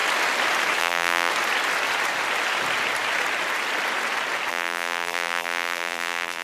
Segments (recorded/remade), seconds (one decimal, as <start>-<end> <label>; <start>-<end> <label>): 0.0-0.8 recorded; 0.8-1.3 remade; 1.3-4.5 recorded; 4.5-6.4 remade